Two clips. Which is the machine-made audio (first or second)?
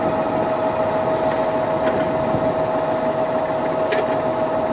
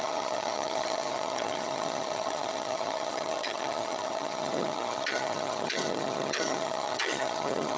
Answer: second